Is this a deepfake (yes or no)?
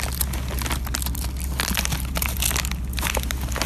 no